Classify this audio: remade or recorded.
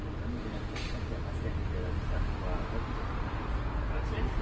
recorded